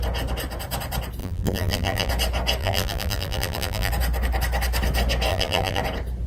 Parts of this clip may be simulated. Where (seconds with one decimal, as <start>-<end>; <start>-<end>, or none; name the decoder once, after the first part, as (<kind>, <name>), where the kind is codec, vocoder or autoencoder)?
1.2-2.1 (vocoder, BigVGAN v2); 2.6-3.9; 5.3-5.8